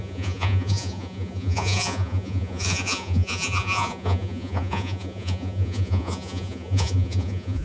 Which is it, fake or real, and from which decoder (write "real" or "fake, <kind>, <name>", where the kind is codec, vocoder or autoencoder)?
fake, vocoder, Vocos